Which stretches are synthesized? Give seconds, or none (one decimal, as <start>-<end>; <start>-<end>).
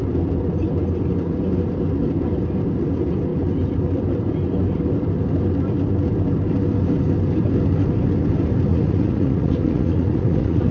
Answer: 8.7-10.7